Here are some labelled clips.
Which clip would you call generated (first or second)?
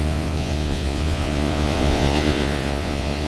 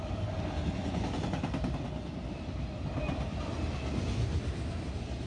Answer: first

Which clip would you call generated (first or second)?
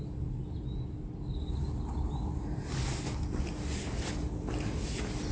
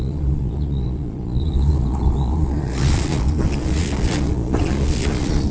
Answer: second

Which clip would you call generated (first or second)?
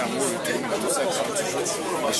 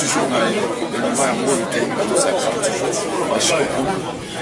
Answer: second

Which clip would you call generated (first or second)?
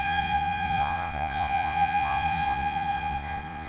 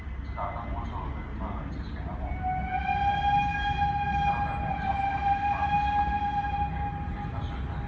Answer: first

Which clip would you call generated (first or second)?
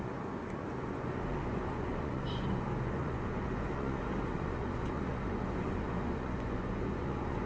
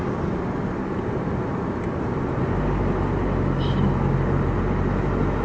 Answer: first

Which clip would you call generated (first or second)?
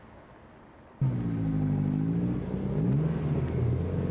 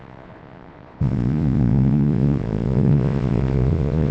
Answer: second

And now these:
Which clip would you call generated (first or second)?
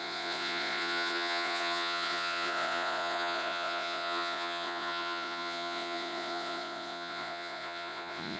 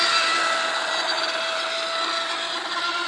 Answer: first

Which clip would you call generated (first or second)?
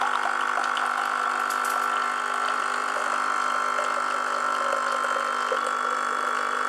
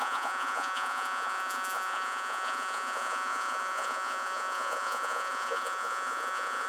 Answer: second